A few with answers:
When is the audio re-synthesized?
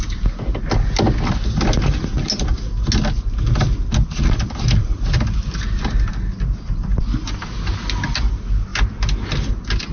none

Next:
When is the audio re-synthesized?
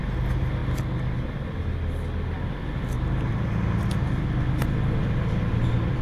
none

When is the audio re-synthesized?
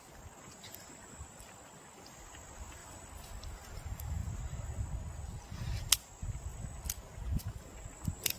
none